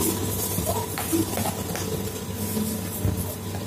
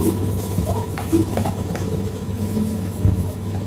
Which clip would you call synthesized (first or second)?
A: second